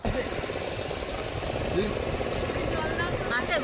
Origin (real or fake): real